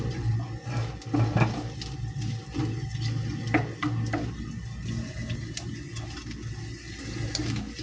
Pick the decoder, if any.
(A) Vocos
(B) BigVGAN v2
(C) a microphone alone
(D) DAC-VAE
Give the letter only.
C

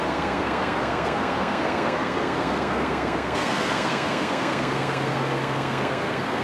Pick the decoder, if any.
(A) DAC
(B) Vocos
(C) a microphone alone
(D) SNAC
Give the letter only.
D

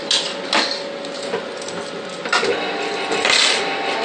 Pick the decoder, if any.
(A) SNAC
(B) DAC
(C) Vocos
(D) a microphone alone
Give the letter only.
D